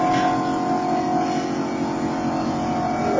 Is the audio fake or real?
real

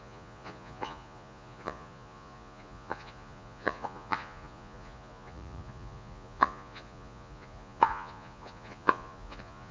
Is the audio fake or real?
fake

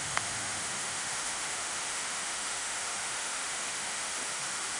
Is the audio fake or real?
fake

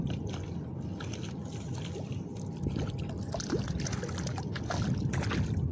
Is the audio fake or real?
real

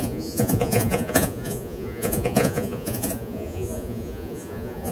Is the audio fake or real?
fake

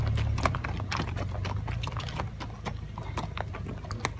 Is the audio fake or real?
real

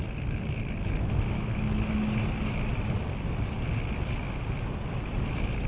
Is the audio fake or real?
real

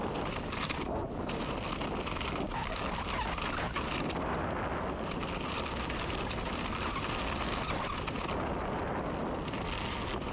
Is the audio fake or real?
real